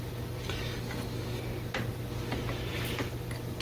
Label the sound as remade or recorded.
recorded